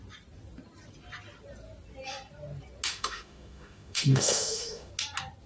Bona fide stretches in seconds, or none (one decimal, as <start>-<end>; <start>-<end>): 0.0-2.9; 4.9-5.5